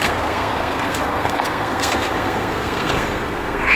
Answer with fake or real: fake